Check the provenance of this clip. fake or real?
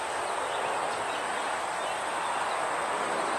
real